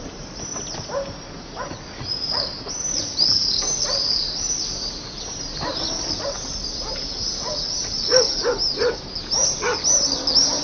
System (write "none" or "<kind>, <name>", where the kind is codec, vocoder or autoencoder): none